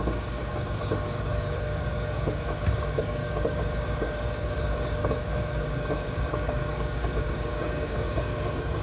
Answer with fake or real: fake